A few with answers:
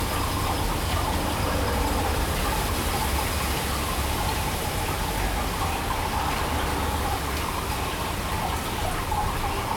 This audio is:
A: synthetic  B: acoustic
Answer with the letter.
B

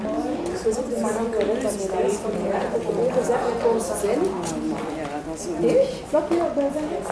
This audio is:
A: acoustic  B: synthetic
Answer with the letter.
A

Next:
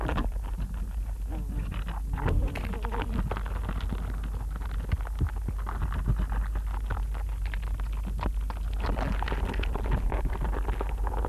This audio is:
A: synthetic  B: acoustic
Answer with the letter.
B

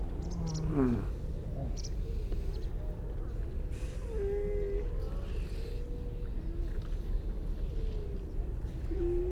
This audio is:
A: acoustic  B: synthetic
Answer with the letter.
A